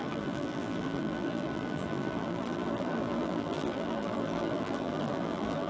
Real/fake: fake